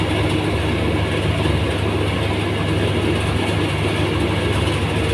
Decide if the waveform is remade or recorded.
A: recorded